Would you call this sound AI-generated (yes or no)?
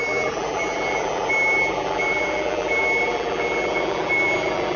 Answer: yes